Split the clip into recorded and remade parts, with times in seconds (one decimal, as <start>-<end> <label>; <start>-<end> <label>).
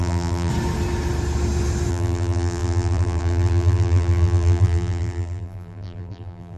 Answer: 0.0-0.5 remade; 0.5-1.9 recorded; 1.9-6.6 remade